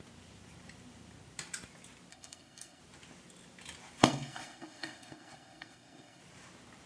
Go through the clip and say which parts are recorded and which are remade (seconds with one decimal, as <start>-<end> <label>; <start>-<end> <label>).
0.0-2.1 recorded; 2.1-2.8 remade; 2.8-4.0 recorded; 4.0-6.2 remade; 6.2-6.9 recorded